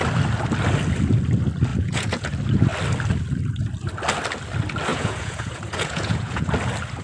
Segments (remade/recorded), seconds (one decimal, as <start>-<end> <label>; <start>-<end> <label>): 0.0-1.7 recorded; 1.7-2.3 remade; 2.3-4.9 recorded; 4.9-6.5 remade; 6.5-7.0 recorded